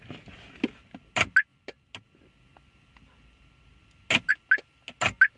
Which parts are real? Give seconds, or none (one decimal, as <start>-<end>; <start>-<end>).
0.0-5.4